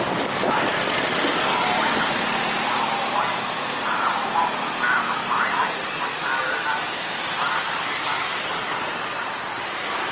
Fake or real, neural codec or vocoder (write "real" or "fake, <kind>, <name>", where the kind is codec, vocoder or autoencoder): real